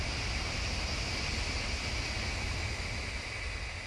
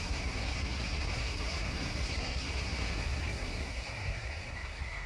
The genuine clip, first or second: first